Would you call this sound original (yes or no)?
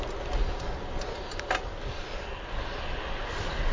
yes